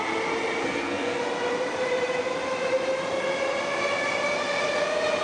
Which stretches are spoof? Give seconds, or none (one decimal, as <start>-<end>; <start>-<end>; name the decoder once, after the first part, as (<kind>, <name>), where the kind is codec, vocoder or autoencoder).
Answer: 0.6-1.2 (codec, SNAC)